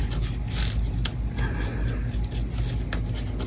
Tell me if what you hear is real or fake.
real